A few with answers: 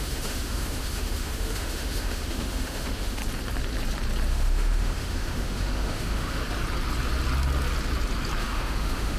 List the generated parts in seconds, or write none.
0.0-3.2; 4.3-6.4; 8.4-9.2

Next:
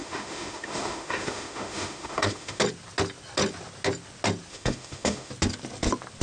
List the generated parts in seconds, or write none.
0.0-2.6; 4.5-5.3

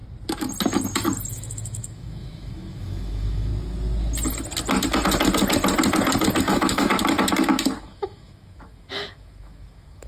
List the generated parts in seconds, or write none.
1.3-3.5; 6.4-6.9; 7.8-10.1

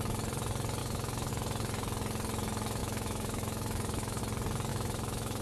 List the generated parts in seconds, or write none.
0.8-1.3; 2.8-4.2; 4.7-5.4

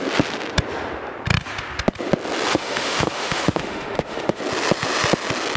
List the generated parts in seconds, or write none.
2.5-4.4

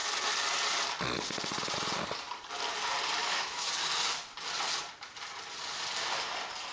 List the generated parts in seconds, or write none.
3.2-3.7